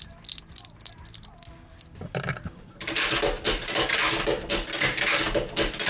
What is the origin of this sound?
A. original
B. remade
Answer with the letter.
A